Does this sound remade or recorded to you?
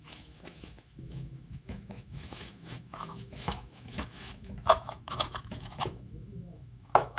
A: remade